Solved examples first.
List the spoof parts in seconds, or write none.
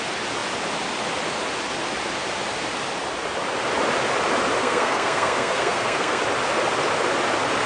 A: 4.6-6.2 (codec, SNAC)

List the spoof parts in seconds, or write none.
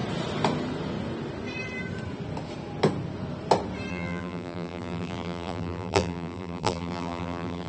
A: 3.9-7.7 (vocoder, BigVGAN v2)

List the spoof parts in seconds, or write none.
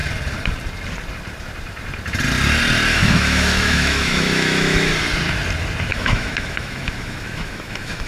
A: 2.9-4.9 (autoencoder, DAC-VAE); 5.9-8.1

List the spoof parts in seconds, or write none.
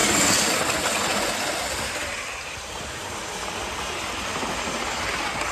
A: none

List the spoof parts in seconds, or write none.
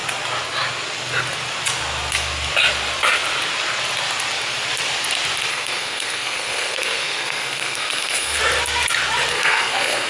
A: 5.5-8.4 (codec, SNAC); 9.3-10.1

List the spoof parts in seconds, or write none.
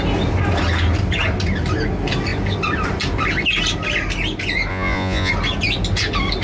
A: 4.7-5.3 (vocoder, Vocos)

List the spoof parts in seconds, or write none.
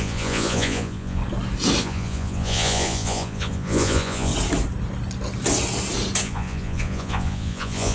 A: 0.0-1.2 (vocoder, Vocos); 1.8-4.3; 6.2-7.9